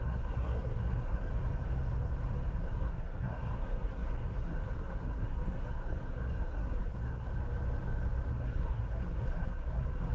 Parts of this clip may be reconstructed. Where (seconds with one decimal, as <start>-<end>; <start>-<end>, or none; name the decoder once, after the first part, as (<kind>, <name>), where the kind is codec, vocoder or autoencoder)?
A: 0.0-1.3 (codec, SNAC); 2.6-7.3; 8.3-10.1

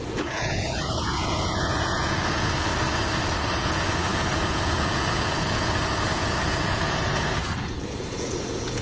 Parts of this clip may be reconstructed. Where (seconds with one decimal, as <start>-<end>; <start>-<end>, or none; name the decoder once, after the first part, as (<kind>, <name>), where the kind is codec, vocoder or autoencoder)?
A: 0.0-2.7 (vocoder, Vocos); 3.3-8.8